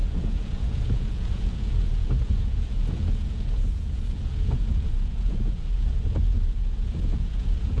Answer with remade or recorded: remade